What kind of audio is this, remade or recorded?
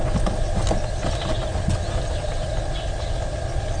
recorded